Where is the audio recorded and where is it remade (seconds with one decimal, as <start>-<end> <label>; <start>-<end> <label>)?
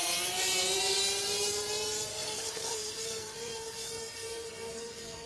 0.0-2.1 recorded; 2.1-5.3 remade